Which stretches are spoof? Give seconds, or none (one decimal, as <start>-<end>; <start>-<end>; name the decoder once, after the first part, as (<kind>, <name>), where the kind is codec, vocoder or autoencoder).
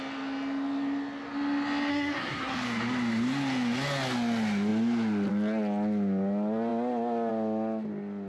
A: 1.9-2.5 (codec, SNAC)